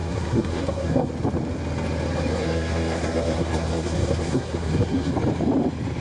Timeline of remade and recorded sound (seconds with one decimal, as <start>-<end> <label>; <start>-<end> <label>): 0.0-1.1 remade; 1.1-2.3 recorded; 2.3-5.1 remade; 5.1-6.0 recorded